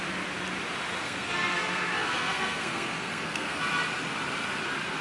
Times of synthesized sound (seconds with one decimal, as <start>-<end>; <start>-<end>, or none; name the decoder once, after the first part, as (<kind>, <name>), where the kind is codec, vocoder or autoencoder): 1.0-3.6 (codec, SNAC)